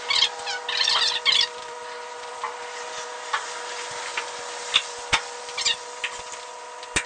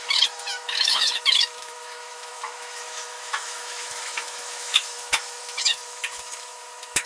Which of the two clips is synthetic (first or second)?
second